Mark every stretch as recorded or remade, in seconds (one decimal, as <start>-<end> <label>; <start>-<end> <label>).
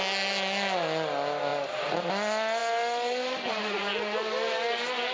0.0-5.1 recorded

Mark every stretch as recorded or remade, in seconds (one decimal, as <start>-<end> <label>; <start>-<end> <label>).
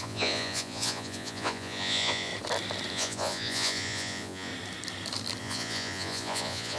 0.0-2.3 remade; 2.3-2.9 recorded; 2.9-4.5 remade; 4.5-5.4 recorded; 5.4-6.8 remade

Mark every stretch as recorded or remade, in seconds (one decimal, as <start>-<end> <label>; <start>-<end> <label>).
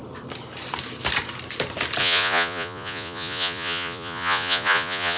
0.0-2.0 recorded; 2.0-5.2 remade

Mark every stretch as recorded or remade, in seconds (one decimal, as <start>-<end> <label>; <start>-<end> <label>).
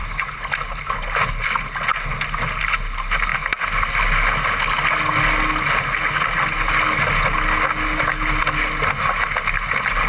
0.0-10.1 recorded